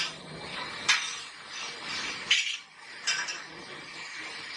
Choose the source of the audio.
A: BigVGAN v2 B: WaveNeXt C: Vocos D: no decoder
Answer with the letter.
A